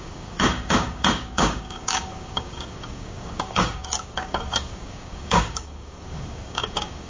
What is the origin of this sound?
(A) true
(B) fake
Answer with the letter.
B